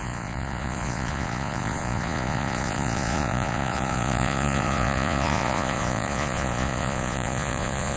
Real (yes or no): no